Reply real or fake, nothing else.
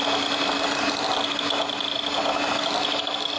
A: real